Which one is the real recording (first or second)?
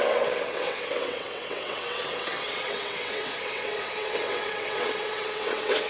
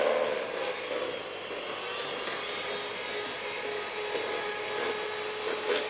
second